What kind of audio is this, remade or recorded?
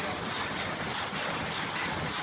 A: recorded